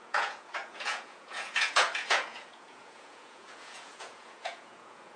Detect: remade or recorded remade